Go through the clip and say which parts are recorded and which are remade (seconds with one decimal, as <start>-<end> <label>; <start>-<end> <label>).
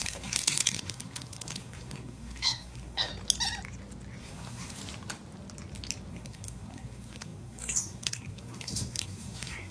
0.0-3.1 remade; 3.1-4.2 recorded; 4.2-4.8 remade; 4.8-6.1 recorded; 6.1-9.7 remade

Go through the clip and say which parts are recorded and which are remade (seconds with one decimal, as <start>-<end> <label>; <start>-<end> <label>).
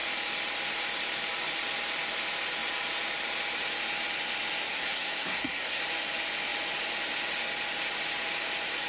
0.0-4.7 recorded; 4.7-5.8 remade; 5.8-8.9 recorded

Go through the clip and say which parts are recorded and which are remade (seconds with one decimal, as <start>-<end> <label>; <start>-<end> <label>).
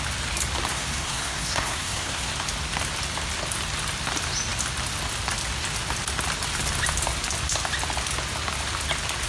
0.0-0.7 recorded; 0.7-2.3 remade; 2.3-9.3 recorded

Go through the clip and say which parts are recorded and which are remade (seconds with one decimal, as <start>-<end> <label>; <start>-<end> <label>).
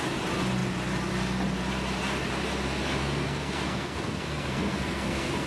0.0-3.0 recorded; 3.0-5.5 remade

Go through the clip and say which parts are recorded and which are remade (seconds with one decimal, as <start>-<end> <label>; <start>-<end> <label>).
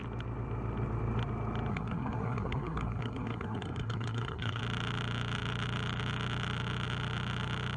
0.0-1.7 recorded; 1.7-4.6 remade; 4.6-7.8 recorded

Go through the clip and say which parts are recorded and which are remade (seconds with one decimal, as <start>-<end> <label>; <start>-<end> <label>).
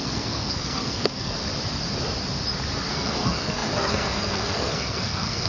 0.0-1.4 remade; 1.4-2.9 recorded; 2.9-5.5 remade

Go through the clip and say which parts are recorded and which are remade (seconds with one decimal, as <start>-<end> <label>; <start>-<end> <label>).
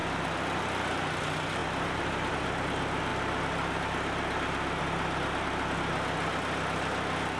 0.0-7.4 recorded